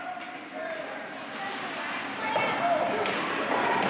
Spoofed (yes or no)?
no